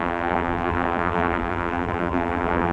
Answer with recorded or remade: remade